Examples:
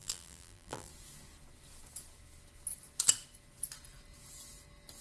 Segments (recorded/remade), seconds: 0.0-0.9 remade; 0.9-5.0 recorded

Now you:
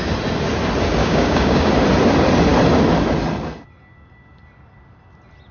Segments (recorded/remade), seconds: 0.0-1.0 recorded; 1.0-1.7 remade; 1.7-5.5 recorded

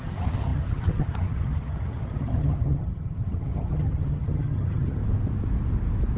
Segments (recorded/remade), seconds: 0.0-5.0 remade; 5.0-6.2 recorded

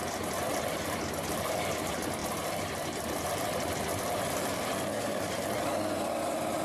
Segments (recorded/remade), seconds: 0.0-6.6 recorded

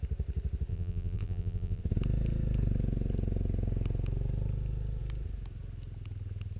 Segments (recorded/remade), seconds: 0.0-0.7 recorded; 0.7-1.8 remade; 1.8-6.6 recorded